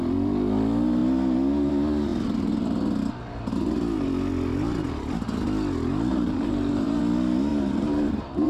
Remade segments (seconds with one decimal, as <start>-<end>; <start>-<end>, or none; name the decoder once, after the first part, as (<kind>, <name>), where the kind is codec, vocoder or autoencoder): 6.1-7.0 (vocoder, BigVGAN v2); 7.5-8.5